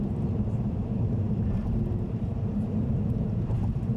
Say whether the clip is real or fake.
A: fake